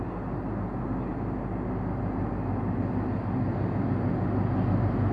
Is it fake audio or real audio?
real